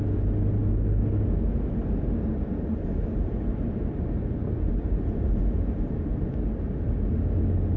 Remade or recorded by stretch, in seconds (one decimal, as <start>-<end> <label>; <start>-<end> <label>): 0.0-7.8 recorded